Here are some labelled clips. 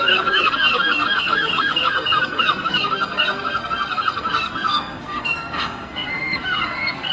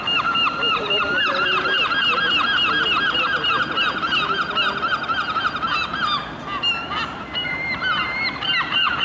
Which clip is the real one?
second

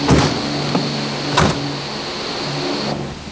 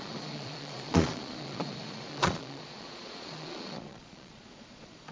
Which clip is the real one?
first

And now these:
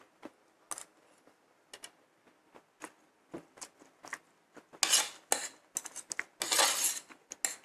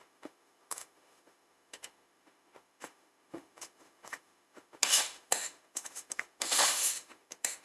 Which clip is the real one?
first